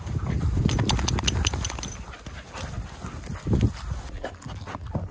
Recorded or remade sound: recorded